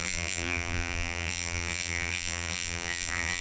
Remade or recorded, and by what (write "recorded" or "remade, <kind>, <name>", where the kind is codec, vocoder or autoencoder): remade, vocoder, BigVGAN v2